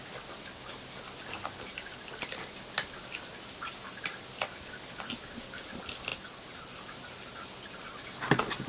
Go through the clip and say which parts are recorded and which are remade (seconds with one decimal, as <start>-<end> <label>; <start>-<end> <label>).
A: 0.0-8.7 recorded